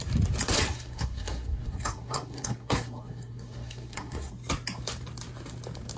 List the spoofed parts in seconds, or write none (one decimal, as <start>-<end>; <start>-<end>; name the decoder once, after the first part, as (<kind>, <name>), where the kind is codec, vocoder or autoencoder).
0.7-4.3 (codec, SNAC)